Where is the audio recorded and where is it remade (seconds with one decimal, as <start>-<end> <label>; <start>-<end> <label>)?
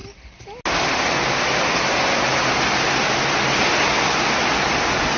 0.0-5.2 recorded